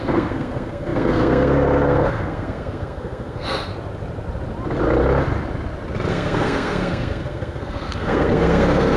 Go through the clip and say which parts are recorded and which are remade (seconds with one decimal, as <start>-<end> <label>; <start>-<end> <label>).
0.0-3.7 remade; 3.7-6.1 recorded; 6.1-9.0 remade